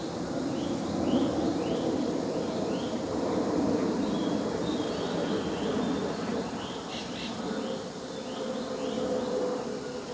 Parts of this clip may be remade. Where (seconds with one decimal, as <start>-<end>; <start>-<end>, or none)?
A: none